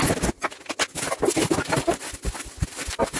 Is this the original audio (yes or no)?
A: yes